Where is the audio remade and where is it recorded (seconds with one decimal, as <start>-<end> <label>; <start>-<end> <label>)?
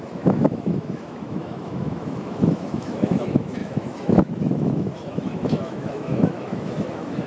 0.0-7.3 remade